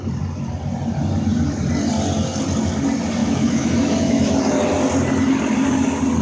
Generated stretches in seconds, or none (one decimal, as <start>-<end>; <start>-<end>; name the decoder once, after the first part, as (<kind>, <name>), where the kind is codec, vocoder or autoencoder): 3.2-4.4 (autoencoder, DAC-VAE)